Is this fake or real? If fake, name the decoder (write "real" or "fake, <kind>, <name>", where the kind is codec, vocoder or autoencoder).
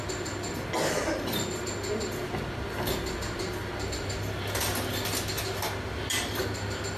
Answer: real